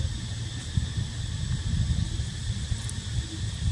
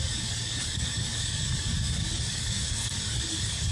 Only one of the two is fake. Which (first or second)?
second